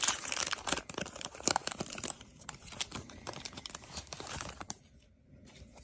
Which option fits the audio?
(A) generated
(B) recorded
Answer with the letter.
A